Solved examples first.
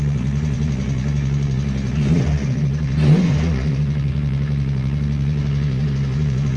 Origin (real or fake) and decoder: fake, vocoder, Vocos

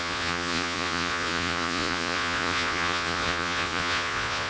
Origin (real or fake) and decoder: fake, vocoder, Vocos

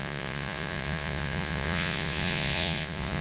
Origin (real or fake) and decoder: fake, vocoder, Vocos